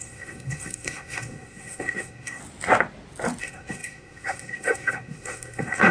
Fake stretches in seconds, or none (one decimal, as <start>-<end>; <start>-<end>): 0.0-2.4; 3.4-5.9